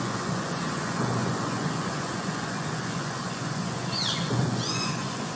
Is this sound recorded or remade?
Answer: remade